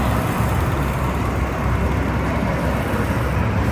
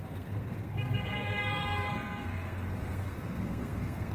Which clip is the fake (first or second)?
second